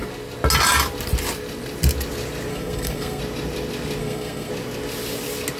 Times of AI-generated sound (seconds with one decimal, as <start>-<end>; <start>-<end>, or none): 2.5-3.2; 4.0-4.5